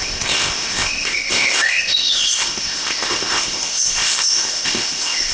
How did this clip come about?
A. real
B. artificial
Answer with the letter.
B